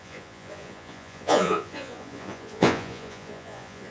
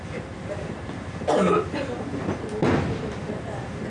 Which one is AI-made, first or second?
first